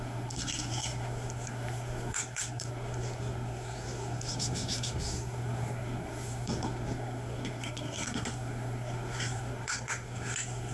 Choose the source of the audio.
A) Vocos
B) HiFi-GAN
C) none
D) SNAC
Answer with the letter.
D